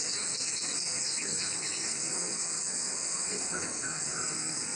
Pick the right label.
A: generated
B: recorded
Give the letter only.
A